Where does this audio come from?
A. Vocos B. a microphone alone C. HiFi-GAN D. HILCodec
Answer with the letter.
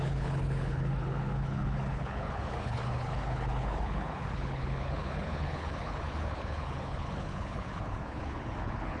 D